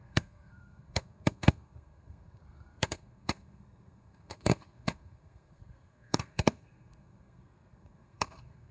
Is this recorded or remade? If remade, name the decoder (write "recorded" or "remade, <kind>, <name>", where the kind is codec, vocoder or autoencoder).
remade, codec, SNAC